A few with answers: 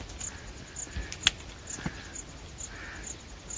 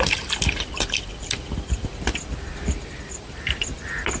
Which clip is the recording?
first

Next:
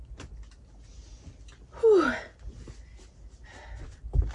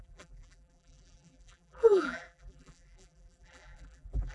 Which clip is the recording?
first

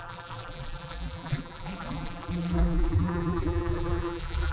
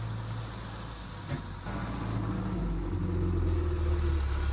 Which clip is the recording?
second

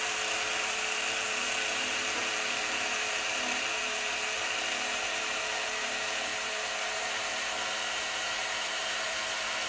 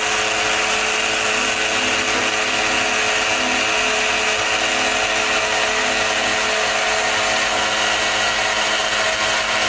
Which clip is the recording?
second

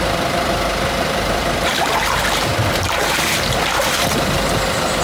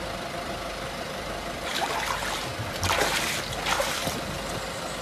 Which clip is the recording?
second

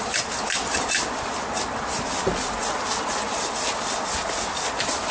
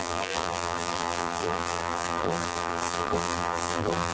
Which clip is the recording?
first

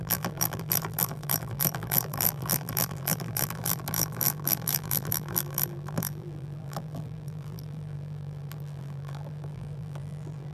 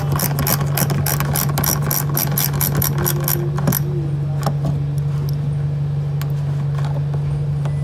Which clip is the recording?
second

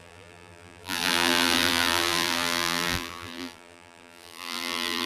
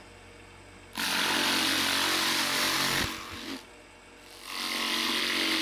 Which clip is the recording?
second